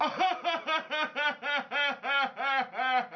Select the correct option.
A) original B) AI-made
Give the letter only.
A